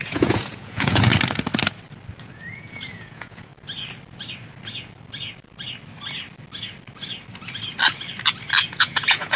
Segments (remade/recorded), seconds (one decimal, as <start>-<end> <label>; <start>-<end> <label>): 0.0-1.1 remade; 1.1-2.2 recorded; 2.2-3.5 remade; 3.5-8.7 recorded; 8.7-9.4 remade